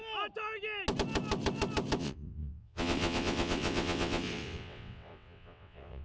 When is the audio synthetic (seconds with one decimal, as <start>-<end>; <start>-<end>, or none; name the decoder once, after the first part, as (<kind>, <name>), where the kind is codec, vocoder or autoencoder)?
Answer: 2.0-6.0 (vocoder, WaveNeXt)